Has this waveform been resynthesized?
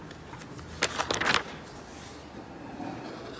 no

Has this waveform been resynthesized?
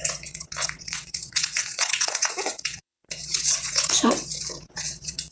yes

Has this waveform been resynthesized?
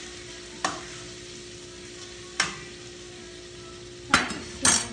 no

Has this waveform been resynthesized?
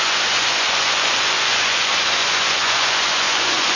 yes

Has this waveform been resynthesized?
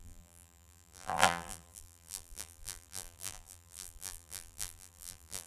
yes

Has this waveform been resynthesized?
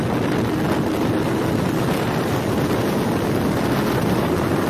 no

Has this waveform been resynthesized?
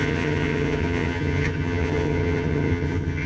yes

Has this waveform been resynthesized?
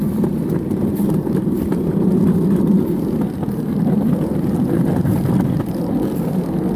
no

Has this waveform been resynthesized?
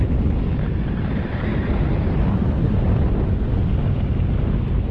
no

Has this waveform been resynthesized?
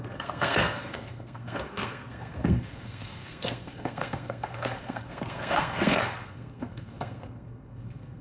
yes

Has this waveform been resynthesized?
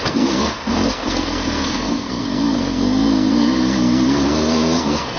yes